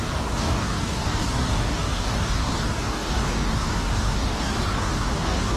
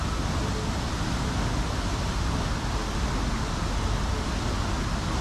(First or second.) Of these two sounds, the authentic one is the second